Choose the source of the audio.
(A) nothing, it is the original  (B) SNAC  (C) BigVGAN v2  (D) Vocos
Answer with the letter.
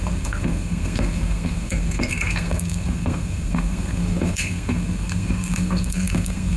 B